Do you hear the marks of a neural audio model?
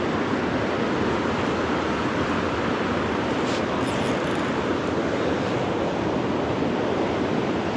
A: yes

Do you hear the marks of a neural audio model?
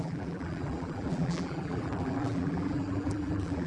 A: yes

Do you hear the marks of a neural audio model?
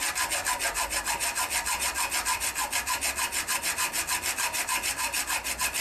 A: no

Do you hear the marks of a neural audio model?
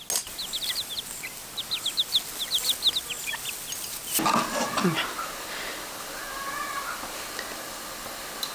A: no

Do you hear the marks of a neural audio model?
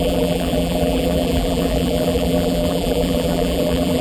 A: yes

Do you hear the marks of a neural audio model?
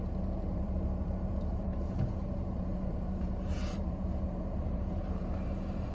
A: yes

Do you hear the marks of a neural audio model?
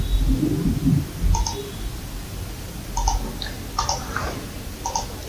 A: no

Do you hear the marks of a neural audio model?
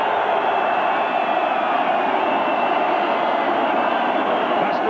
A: no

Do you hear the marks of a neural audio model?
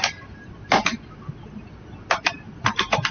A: yes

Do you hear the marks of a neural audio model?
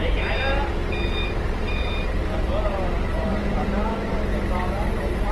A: yes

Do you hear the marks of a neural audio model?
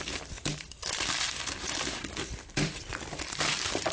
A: yes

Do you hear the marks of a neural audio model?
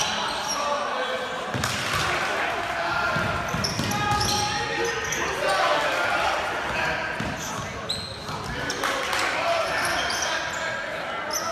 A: no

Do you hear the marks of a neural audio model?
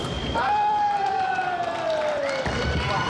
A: yes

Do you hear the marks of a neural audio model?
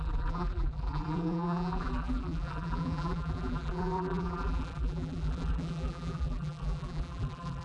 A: yes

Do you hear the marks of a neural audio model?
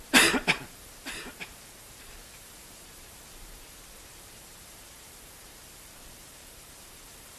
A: yes